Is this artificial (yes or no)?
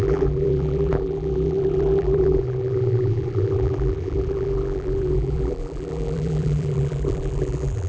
yes